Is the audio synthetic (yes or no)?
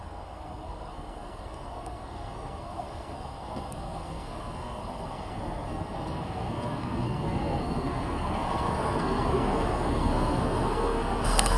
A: yes